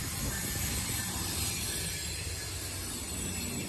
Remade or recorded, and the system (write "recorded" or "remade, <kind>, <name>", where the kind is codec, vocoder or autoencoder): recorded